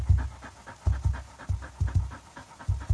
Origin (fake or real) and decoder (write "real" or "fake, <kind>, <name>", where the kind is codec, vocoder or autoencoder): real